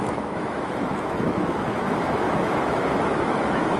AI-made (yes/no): yes